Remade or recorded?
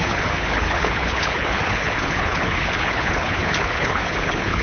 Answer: remade